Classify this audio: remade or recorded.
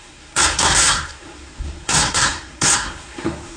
remade